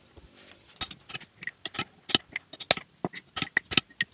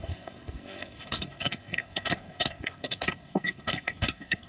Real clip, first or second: first